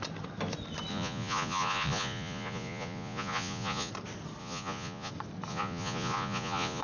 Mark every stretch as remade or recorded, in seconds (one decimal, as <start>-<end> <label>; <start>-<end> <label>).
0.0-0.9 recorded; 0.9-3.9 remade; 3.9-4.4 recorded; 4.4-5.1 remade; 5.1-5.5 recorded; 5.5-6.8 remade